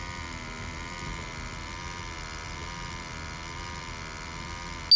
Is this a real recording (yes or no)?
yes